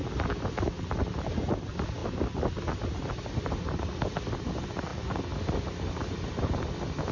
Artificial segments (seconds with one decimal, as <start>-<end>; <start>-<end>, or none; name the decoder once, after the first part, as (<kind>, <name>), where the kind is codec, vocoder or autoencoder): none